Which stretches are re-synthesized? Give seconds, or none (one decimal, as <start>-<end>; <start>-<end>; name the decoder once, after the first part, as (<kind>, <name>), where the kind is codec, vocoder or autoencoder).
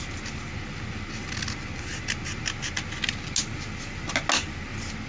none